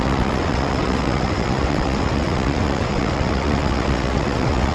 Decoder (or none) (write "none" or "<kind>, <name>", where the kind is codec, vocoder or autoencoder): vocoder, WaveNeXt